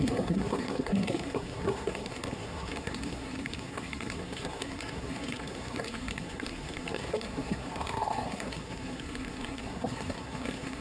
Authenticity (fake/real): fake